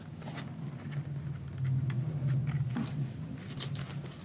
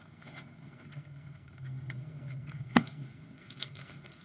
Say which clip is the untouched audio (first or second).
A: first